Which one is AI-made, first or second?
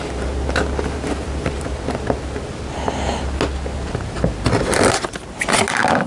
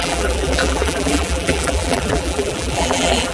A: second